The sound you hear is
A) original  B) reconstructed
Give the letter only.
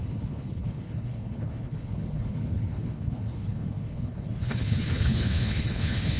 B